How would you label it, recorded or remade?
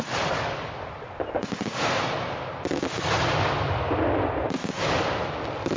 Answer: recorded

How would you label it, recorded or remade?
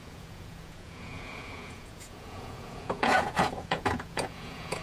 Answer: remade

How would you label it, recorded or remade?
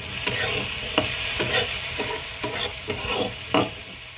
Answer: recorded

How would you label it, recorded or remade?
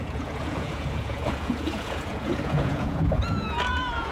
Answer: remade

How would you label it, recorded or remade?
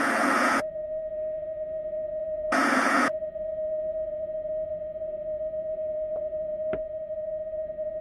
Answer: remade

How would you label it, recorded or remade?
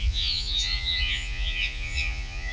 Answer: remade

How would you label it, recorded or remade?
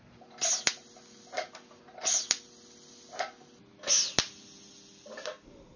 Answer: recorded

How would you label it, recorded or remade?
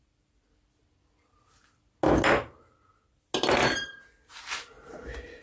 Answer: recorded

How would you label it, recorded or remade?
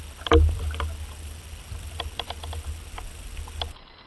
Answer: recorded